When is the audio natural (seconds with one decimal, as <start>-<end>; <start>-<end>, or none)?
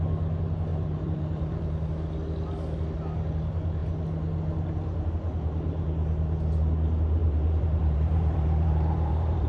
0.0-0.7; 1.7-7.2